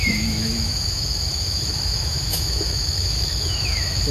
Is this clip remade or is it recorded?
remade